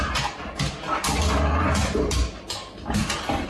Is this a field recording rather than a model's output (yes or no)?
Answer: yes